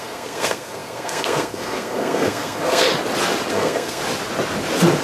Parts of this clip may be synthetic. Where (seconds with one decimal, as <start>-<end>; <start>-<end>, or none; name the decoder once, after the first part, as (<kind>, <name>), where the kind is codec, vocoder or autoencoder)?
0.0-2.9 (codec, SNAC); 3.5-4.0